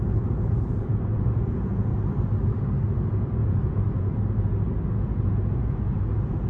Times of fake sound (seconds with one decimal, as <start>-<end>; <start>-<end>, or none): 0.0-1.9; 3.0-4.1; 4.9-6.5